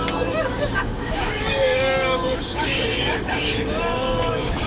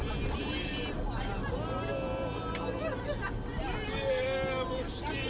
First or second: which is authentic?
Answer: second